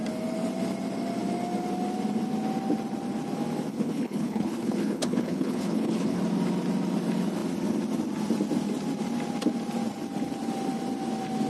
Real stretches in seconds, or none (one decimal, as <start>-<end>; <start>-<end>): 0.0-3.7; 6.2-11.5